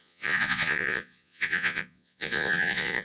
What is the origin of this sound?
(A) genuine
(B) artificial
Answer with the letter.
B